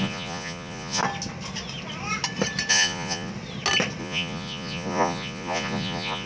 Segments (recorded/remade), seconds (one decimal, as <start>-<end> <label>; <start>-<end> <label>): 0.0-1.0 remade; 1.0-2.7 recorded; 2.7-3.3 remade; 3.3-4.0 recorded; 4.0-6.3 remade